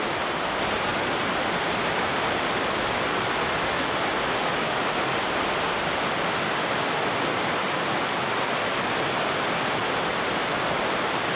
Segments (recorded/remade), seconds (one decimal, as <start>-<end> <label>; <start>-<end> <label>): 0.0-11.4 recorded

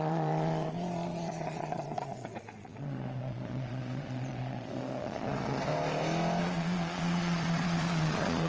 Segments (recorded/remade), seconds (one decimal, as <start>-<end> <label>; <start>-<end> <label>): 0.0-5.7 remade; 5.7-6.4 recorded; 6.4-8.5 remade

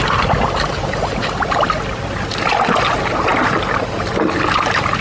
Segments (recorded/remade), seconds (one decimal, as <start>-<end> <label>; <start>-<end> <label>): 0.0-5.0 recorded

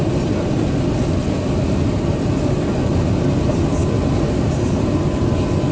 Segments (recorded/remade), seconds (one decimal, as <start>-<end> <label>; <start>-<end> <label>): 0.0-5.7 recorded

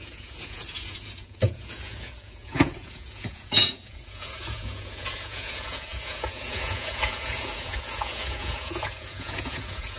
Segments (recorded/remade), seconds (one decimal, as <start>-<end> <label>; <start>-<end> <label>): 0.0-10.0 remade

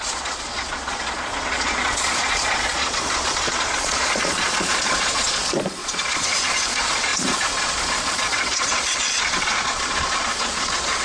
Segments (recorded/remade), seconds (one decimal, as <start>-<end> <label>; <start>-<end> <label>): 0.0-11.0 remade

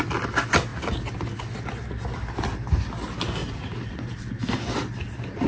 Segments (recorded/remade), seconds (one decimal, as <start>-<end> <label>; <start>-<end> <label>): 0.0-3.4 recorded; 3.4-4.0 remade; 4.0-5.5 recorded